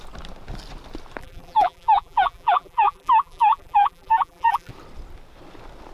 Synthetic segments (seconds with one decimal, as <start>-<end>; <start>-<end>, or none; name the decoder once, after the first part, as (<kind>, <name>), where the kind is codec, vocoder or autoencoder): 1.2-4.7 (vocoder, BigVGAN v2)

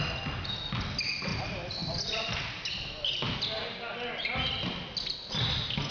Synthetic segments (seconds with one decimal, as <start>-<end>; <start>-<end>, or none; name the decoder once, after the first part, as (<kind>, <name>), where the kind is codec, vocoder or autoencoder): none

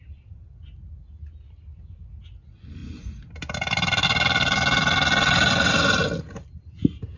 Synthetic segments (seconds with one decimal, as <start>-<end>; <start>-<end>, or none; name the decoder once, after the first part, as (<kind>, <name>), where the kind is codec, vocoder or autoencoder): none